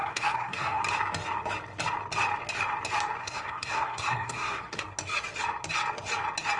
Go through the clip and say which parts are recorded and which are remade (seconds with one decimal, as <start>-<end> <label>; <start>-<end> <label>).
0.0-0.8 remade; 0.8-3.2 recorded; 3.2-4.8 remade; 4.8-6.6 recorded